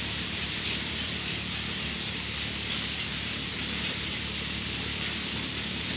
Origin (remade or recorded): remade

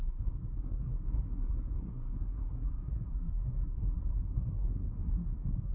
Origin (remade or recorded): remade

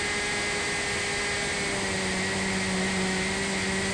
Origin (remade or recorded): recorded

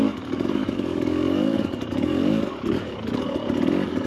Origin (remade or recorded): remade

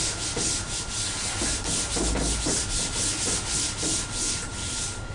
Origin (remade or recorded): recorded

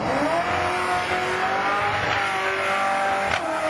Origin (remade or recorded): recorded